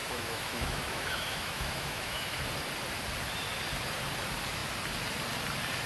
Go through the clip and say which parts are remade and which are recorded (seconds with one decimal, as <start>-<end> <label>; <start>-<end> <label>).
0.0-2.4 remade; 2.4-5.9 recorded